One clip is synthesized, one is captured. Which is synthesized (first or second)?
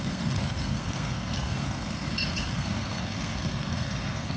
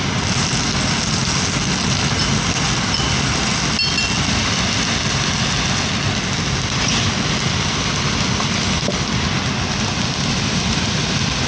first